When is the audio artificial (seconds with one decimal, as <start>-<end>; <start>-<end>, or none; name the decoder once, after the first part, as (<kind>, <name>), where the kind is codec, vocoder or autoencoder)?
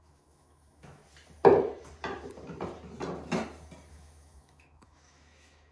0.0-1.0 (autoencoder, DAC-VAE); 3.9-5.7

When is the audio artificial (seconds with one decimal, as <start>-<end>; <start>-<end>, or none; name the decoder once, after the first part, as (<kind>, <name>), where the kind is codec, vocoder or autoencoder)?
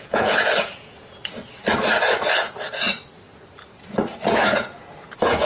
0.0-1.2 (vocoder, Vocos); 4.3-5.5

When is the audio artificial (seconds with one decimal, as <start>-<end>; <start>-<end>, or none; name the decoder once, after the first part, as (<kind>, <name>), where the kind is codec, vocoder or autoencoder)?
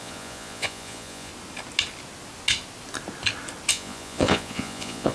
0.0-1.3 (vocoder, Vocos); 3.7-5.1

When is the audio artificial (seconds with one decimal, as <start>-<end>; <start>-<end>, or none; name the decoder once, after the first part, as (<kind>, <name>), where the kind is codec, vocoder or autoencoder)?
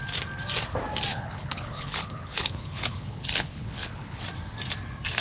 1.1-4.2 (codec, HILCodec)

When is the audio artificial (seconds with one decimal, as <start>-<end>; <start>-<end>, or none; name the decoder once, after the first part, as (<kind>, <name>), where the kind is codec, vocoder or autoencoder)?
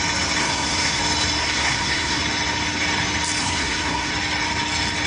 0.4-1.0 (codec, SNAC); 1.4-2.2; 3.4-4.1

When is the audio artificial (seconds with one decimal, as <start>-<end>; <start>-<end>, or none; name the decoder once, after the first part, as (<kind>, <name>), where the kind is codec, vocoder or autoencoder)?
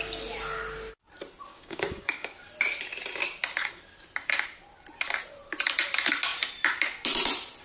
1.5-2.4 (codec, DAC)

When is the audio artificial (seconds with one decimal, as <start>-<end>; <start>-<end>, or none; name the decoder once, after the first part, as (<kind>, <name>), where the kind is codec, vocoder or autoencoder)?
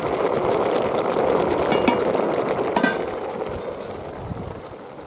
none